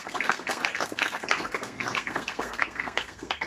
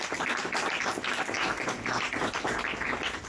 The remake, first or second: first